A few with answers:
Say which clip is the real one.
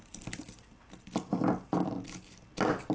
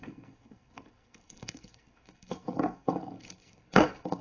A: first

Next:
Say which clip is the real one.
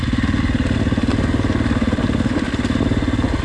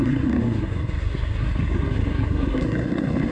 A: first